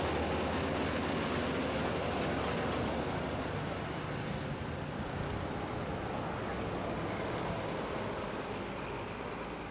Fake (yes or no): no